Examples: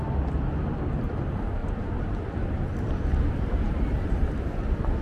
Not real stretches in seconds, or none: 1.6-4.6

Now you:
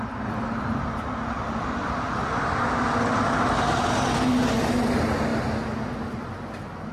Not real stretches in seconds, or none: none

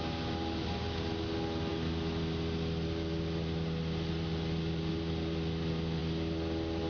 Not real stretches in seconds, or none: none

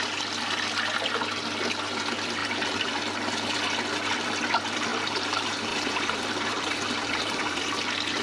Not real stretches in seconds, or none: 2.4-3.0; 4.9-7.7